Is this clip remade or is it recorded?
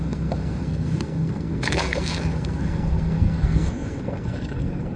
remade